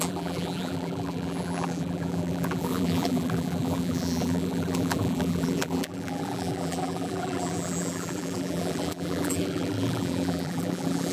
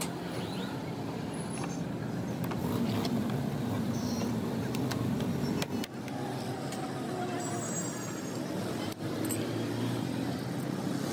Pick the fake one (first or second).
first